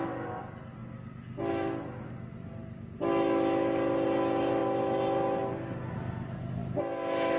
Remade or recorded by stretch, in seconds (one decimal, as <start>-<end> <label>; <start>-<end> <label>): 0.0-7.4 recorded